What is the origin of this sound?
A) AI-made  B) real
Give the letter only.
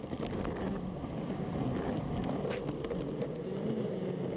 B